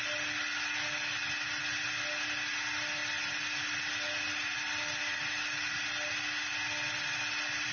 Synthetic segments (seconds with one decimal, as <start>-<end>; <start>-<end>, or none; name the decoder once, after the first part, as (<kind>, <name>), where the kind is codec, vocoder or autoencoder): none